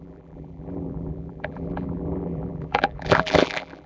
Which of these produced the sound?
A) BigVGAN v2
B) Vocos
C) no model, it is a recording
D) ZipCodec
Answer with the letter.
A